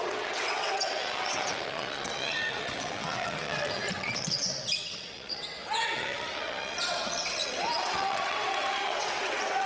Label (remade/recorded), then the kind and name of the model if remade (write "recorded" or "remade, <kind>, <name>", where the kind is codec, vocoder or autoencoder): remade, vocoder, WaveNeXt